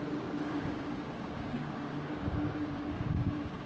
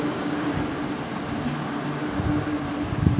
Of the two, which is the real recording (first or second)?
second